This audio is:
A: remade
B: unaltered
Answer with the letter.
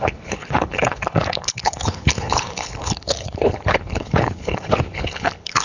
A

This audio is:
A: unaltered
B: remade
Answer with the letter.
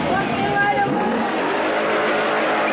A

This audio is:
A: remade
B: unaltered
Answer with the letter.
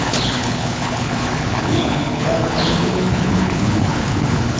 A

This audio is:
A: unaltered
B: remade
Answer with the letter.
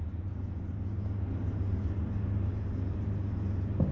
B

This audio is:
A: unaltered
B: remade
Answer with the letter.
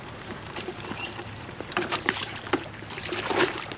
B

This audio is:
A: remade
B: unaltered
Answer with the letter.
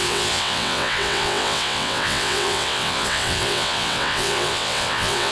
A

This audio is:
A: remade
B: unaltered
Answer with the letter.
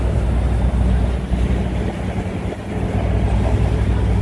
B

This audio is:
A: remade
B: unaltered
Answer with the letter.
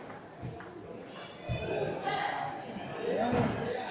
B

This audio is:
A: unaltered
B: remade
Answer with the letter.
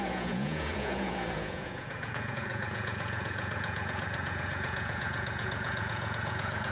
B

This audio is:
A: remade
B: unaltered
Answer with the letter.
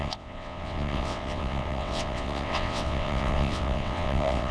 A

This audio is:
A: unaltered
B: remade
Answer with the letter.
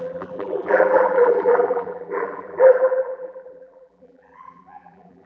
B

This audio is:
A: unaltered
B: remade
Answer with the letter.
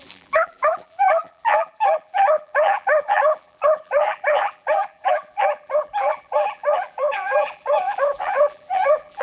B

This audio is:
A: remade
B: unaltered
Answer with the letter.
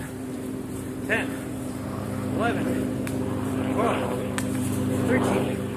A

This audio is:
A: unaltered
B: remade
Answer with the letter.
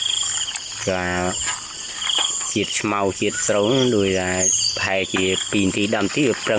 A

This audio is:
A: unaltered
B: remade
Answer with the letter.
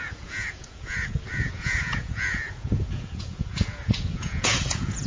B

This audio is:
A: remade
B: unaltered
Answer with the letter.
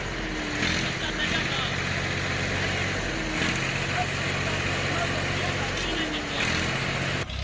B